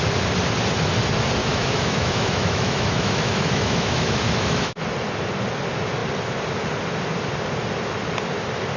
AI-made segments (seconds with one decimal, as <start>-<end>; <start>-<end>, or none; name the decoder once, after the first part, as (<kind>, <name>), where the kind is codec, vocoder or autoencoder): 1.4-4.8 (autoencoder, DAC-VAE)